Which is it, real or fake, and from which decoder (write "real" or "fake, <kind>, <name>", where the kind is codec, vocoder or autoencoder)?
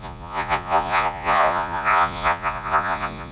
fake, vocoder, Vocos